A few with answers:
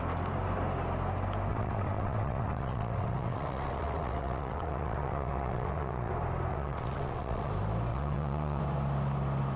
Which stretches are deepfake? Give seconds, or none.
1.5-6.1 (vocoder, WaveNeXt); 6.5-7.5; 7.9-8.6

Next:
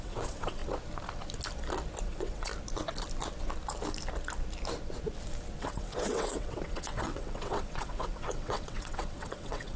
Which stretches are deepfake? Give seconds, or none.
0.0-0.6 (vocoder, WaveNeXt); 2.0-2.5; 5.6-9.8